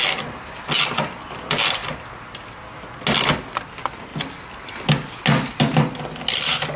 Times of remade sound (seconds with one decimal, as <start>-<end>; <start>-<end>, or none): none